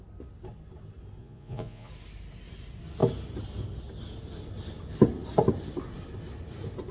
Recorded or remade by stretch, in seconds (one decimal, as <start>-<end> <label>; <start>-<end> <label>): 0.0-1.2 recorded; 1.2-1.9 remade; 1.9-6.9 recorded